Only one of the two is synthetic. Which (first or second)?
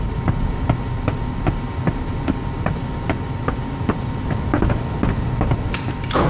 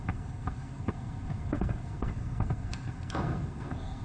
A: second